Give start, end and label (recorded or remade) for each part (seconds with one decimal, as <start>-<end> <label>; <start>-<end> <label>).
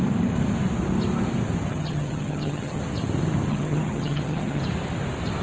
0.0-1.7 recorded; 1.7-2.8 remade; 2.8-3.5 recorded; 3.5-4.6 remade; 4.6-5.4 recorded